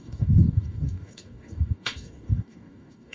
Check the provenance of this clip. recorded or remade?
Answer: remade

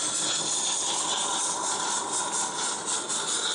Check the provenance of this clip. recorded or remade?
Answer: recorded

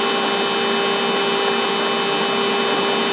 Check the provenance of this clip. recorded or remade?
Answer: recorded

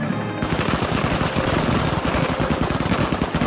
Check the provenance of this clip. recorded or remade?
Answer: recorded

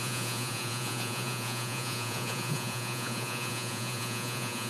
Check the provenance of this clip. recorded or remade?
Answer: remade